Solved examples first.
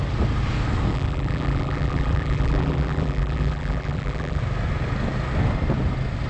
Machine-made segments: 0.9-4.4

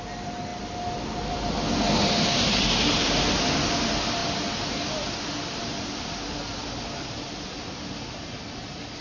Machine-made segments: 2.0-3.4

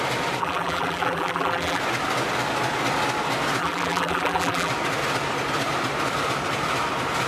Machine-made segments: 0.4-1.8; 3.6-4.7

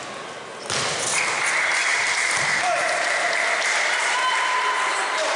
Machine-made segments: 1.9-3.7

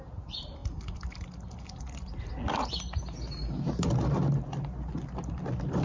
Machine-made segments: none

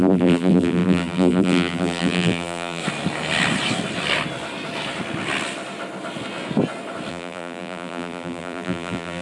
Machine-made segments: 0.0-2.8; 7.1-9.2

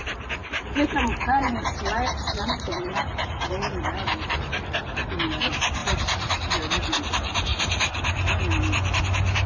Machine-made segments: 0.4-4.4; 5.8-6.6

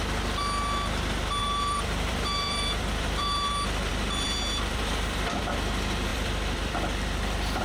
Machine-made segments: 1.4-3.5; 3.9-5.4; 6.1-7.6